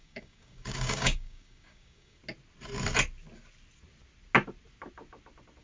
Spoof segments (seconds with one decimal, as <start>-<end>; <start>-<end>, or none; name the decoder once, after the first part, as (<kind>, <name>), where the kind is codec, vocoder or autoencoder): 0.0-2.2 (codec, DAC)